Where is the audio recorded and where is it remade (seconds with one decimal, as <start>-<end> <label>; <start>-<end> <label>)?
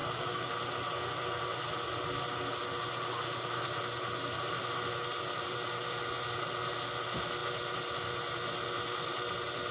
0.0-0.5 remade; 0.5-9.7 recorded